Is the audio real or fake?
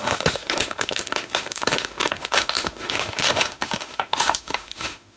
fake